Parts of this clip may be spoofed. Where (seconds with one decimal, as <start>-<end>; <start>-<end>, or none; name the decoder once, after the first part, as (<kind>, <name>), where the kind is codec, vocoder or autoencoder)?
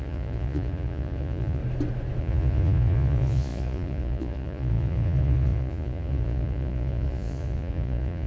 0.0-1.6 (vocoder, Vocos); 2.2-8.3